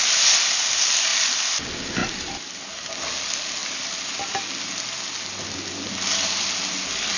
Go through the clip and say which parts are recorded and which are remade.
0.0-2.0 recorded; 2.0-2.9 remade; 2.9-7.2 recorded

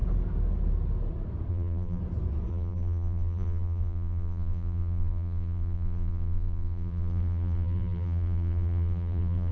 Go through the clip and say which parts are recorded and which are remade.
0.0-1.5 recorded; 1.5-2.0 remade; 2.0-2.5 recorded; 2.5-9.5 remade

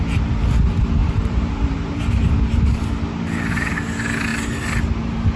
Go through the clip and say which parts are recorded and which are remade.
0.0-1.0 recorded; 1.0-2.9 remade; 2.9-5.4 recorded

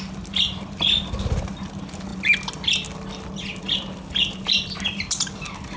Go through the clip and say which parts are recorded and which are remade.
0.0-5.8 recorded

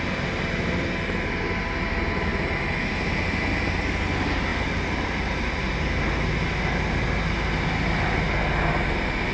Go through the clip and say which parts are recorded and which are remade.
0.0-9.3 recorded

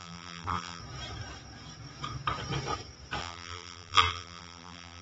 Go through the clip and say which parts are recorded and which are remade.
0.0-0.8 remade; 0.8-3.2 recorded; 3.2-5.0 remade

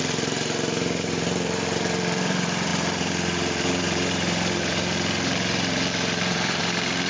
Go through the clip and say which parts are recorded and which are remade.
0.0-7.1 remade

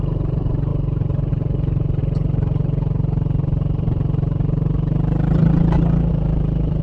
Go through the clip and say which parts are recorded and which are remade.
0.0-0.7 remade; 0.7-1.3 recorded; 1.3-2.0 remade; 2.0-6.1 recorded; 6.1-6.8 remade